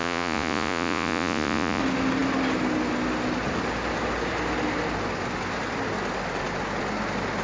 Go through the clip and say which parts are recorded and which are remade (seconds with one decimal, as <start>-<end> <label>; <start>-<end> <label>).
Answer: 0.0-1.8 remade; 1.8-7.4 recorded

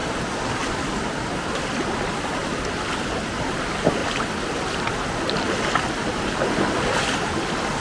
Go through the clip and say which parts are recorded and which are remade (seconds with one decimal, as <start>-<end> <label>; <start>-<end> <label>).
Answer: 0.0-7.8 recorded